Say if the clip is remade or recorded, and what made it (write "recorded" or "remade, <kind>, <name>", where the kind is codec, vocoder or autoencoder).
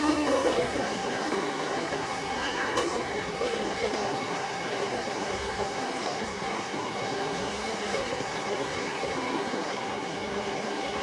remade, codec, SNAC